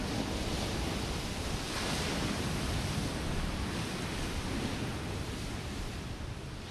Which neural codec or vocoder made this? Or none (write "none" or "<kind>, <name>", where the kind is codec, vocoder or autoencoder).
none